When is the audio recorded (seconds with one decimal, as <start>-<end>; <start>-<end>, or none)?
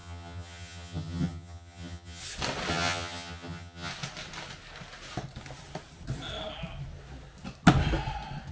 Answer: 2.2-2.7; 3.9-8.5